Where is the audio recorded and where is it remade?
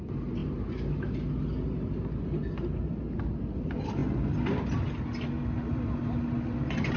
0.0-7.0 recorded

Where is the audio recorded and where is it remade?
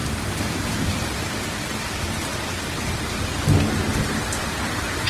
0.0-1.3 remade; 1.3-5.1 recorded